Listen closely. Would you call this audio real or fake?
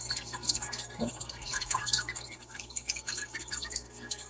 fake